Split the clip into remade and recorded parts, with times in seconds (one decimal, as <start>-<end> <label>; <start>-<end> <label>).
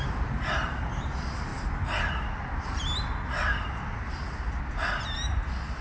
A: 0.0-5.8 recorded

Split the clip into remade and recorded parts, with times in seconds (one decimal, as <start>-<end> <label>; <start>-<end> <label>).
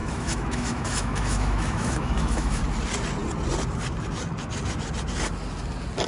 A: 0.0-2.6 remade; 2.6-6.1 recorded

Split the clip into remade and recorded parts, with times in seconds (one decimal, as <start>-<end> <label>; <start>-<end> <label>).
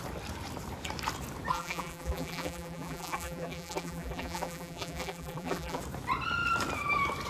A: 0.0-1.5 recorded; 1.5-5.8 remade; 5.8-7.3 recorded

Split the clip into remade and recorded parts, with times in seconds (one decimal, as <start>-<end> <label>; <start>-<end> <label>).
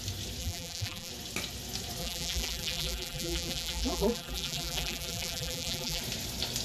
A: 0.0-0.4 recorded; 0.4-1.1 remade; 1.1-2.0 recorded; 2.0-6.0 remade; 6.0-6.6 recorded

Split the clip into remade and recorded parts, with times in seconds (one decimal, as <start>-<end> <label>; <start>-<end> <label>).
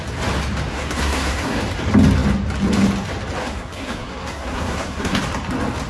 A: 0.0-0.7 recorded; 0.7-1.6 remade; 1.6-3.4 recorded; 3.4-5.2 remade; 5.2-5.9 recorded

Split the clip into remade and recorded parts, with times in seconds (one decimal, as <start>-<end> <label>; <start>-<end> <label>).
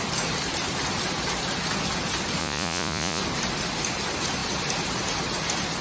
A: 0.0-2.4 recorded; 2.4-3.2 remade; 3.2-5.8 recorded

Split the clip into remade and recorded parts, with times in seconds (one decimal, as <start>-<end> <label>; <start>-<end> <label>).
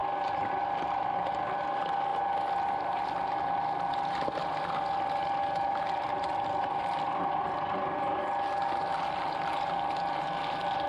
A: 0.0-10.9 recorded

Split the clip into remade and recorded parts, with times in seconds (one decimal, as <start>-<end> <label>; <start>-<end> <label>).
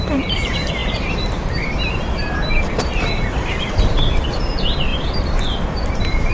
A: 0.0-6.3 remade